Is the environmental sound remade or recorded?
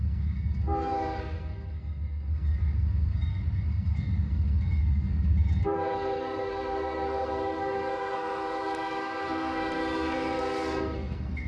remade